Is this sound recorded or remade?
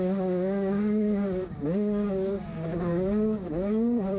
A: remade